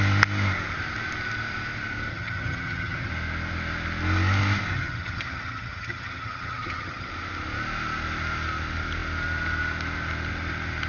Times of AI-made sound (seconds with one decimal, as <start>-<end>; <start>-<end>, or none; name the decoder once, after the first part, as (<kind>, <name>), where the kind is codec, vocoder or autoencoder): 2.1-3.1 (vocoder, HiFi-GAN); 4.7-7.1